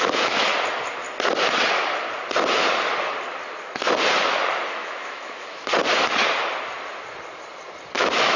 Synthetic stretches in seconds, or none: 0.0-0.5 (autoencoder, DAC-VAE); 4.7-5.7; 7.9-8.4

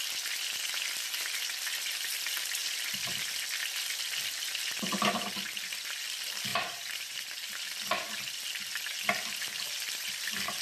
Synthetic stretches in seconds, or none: 6.5-7.2 (vocoder, BigVGAN v2)

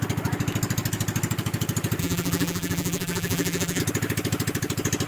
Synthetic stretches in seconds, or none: 2.0-3.8 (vocoder, BigVGAN v2)

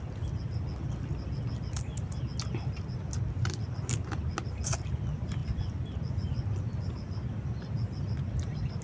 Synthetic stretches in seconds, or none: none

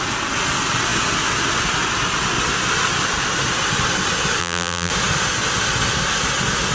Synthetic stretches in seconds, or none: 4.4-4.9 (vocoder, BigVGAN v2)